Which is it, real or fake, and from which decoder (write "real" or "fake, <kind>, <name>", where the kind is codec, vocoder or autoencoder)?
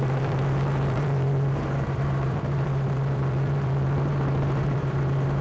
fake, vocoder, BigVGAN v2